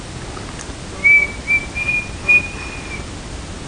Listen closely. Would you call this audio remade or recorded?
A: recorded